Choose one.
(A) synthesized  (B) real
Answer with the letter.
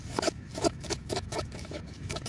A